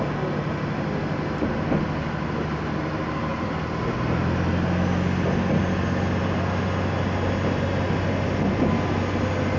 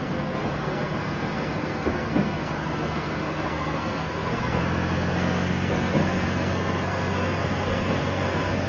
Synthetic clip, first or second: second